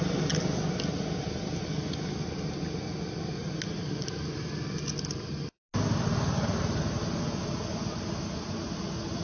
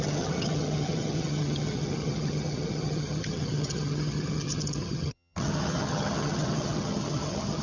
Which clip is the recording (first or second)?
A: first